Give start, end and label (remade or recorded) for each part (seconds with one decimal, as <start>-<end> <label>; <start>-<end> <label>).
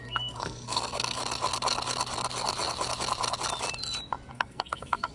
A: 0.0-1.2 remade; 1.2-4.3 recorded; 4.3-5.1 remade